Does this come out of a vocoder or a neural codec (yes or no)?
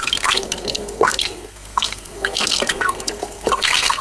yes